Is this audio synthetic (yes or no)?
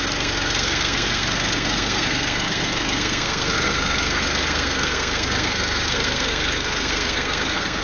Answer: yes